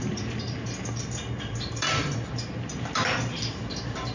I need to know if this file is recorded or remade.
remade